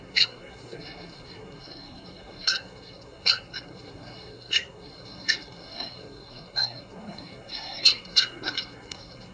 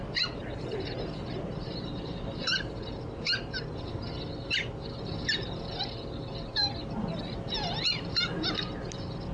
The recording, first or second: second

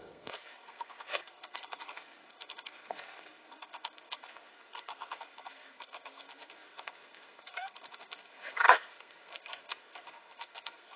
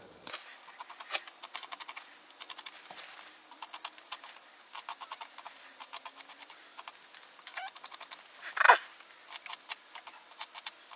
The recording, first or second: second